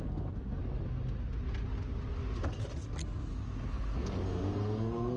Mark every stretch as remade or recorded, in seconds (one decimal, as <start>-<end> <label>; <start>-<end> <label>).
0.0-0.6 remade; 0.6-3.7 recorded; 3.7-5.2 remade